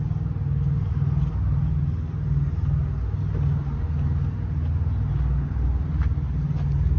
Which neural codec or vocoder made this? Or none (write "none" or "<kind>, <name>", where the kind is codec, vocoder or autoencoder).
none